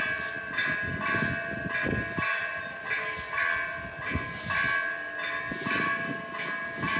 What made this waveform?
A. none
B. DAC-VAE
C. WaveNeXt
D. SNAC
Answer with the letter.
A